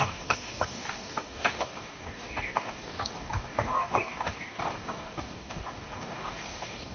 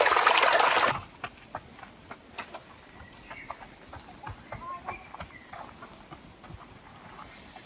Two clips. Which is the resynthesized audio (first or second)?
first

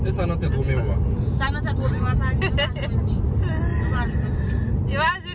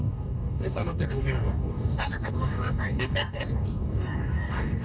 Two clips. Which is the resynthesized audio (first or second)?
second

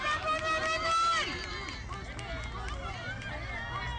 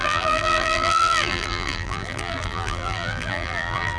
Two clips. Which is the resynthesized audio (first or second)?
second